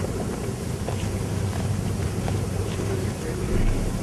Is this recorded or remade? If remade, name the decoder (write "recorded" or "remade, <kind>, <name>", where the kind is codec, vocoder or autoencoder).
remade, vocoder, BigVGAN v2